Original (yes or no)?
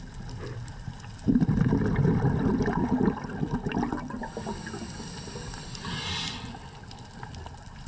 yes